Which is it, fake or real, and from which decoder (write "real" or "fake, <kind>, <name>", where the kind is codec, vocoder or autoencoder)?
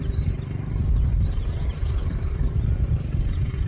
fake, vocoder, BigVGAN v2